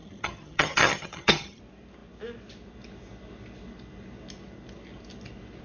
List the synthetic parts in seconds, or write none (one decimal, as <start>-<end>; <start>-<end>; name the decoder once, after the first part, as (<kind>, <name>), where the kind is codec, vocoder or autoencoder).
0.0-1.6 (vocoder, HiFi-GAN)